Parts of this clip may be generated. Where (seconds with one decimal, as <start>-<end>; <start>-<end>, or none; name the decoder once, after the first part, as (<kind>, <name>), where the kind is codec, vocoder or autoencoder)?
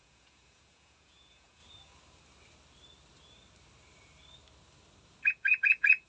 0.0-1.6 (vocoder, Vocos); 5.3-6.1